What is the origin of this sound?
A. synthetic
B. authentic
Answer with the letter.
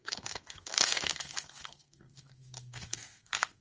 A